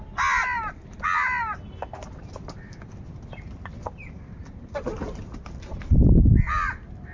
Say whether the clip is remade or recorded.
recorded